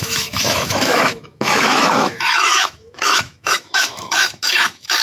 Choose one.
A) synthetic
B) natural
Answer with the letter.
A